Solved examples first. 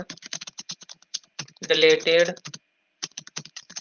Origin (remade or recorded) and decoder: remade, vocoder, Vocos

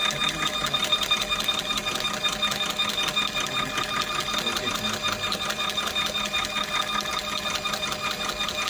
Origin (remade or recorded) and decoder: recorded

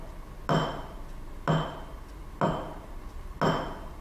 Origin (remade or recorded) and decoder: recorded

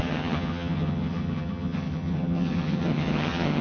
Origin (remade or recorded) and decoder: remade, vocoder, HiFi-GAN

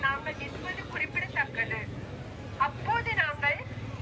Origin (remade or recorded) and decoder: recorded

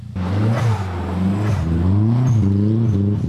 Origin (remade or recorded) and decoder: recorded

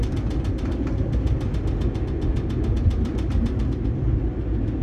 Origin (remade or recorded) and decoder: recorded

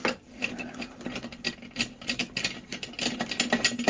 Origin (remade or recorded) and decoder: recorded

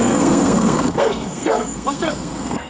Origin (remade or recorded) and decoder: remade, codec, SNAC